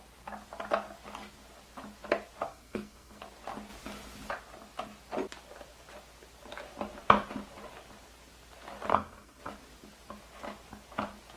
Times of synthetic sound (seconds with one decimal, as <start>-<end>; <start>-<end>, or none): 2.5-3.2; 8.9-9.4